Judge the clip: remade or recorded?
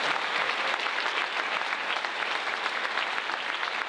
recorded